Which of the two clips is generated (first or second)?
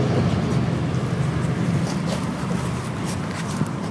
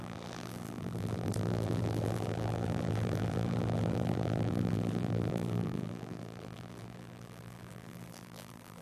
second